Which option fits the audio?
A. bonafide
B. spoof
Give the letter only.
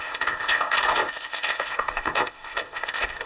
B